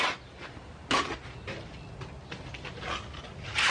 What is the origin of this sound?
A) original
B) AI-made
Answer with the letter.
A